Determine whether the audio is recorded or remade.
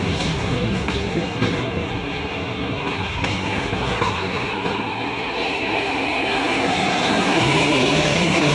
remade